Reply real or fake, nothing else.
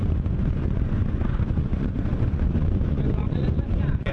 fake